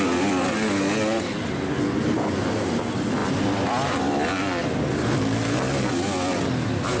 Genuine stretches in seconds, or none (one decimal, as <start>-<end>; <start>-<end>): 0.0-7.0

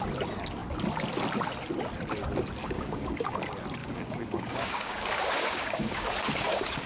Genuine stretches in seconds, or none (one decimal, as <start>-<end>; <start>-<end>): 0.0-2.6; 3.4-3.8

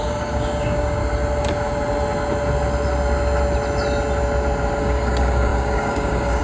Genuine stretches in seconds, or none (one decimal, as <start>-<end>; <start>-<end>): 1.0-4.8

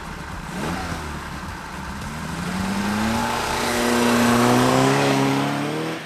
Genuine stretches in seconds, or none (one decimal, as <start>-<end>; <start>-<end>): 0.0-0.8; 1.6-3.2; 3.8-4.7; 5.3-6.1

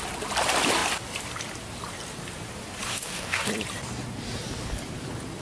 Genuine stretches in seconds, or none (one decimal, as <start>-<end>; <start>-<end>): 0.0-2.9; 3.5-5.4

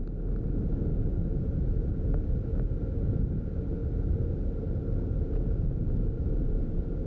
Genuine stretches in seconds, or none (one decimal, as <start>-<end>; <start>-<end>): 0.0-0.9; 1.4-7.1

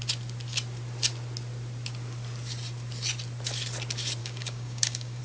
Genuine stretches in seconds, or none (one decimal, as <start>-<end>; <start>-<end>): 0.0-4.2